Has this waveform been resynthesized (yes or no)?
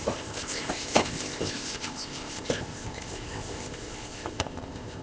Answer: yes